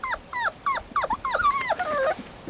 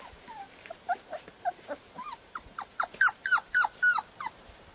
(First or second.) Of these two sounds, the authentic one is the first